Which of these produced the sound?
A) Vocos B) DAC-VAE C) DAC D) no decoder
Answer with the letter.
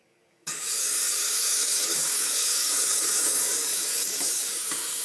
C